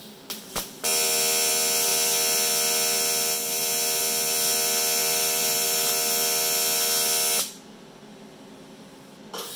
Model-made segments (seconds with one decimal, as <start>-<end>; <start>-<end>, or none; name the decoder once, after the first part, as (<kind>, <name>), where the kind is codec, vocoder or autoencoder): 5.0-5.9 (vocoder, BigVGAN v2)